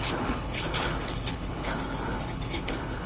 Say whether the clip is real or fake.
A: fake